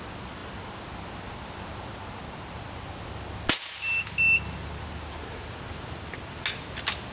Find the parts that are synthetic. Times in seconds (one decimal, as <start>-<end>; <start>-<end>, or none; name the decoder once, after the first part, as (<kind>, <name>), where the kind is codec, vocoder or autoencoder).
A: none